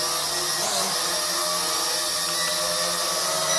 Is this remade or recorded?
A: recorded